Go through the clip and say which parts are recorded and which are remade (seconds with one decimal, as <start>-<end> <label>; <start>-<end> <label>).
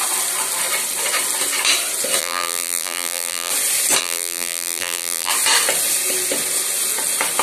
0.0-2.2 recorded; 2.2-3.5 remade; 3.5-4.0 recorded; 4.0-5.3 remade; 5.3-7.4 recorded